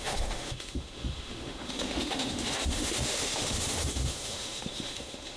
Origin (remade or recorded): remade